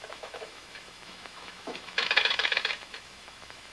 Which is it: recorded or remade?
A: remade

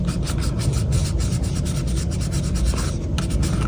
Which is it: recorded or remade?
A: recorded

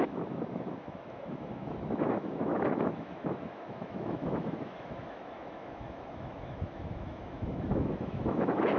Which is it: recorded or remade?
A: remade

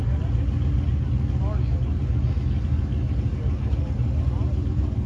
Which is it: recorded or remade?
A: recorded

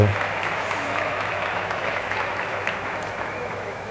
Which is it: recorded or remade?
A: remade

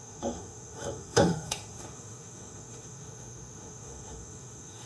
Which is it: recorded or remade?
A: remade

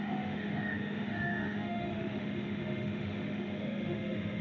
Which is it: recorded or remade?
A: remade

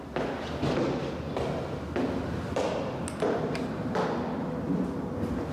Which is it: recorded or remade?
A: recorded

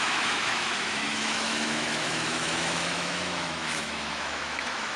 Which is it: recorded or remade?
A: remade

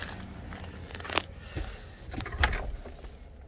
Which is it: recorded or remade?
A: recorded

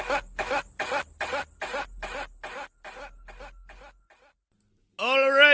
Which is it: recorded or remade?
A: recorded